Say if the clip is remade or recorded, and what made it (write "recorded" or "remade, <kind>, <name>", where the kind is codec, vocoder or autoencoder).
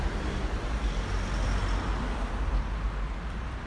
recorded